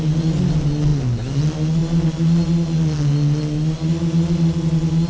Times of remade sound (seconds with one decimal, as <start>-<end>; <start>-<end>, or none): none